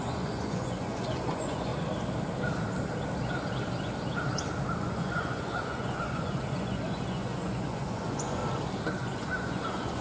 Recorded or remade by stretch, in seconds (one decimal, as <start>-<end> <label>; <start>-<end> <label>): 0.0-1.7 remade; 1.7-4.8 recorded; 4.8-8.4 remade; 8.4-8.9 recorded; 8.9-10.0 remade